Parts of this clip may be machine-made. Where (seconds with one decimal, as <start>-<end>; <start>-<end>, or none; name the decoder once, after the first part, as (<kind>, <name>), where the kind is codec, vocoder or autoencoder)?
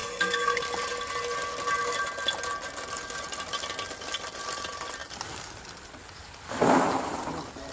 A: 0.0-0.6 (codec, SNAC)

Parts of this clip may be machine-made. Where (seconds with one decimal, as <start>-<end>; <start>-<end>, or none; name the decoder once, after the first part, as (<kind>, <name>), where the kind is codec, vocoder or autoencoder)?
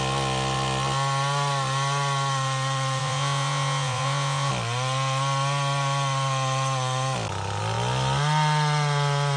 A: 3.0-4.5 (vocoder, Vocos)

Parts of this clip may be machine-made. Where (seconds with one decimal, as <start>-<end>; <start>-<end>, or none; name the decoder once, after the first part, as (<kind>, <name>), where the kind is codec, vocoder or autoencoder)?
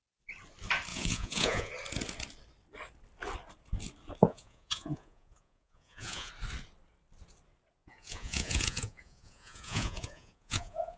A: 0.9-1.7 (vocoder, Vocos); 4.2-6.3; 7.8-11.0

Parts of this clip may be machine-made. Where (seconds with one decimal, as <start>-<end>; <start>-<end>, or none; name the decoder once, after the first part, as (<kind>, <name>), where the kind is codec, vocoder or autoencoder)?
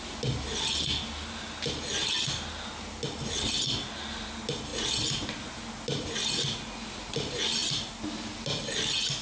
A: none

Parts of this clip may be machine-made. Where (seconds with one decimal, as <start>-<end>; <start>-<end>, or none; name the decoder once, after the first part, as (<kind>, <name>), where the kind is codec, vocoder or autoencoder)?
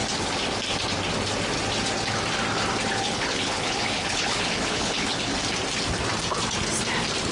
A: 3.0-5.3 (codec, HILCodec)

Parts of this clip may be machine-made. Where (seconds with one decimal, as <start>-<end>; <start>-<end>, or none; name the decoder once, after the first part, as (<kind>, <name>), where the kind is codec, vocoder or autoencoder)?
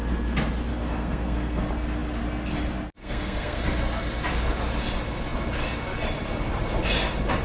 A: 0.7-1.6 (codec, SNAC); 3.0-3.6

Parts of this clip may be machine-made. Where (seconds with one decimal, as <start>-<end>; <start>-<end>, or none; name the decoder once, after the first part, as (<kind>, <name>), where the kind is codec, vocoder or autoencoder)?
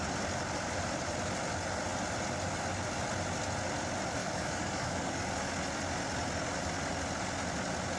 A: 4.2-5.3 (codec, DAC)